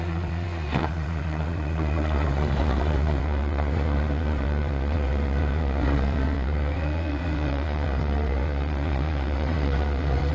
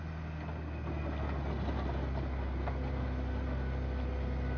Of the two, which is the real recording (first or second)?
second